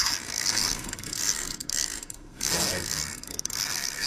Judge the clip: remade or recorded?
remade